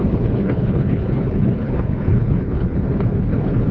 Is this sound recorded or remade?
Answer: remade